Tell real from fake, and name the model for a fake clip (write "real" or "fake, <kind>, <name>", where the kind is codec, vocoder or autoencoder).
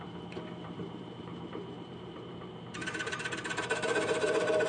fake, vocoder, BigVGAN v2